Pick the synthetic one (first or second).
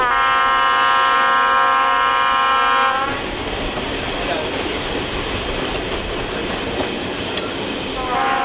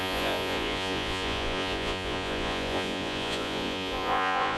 second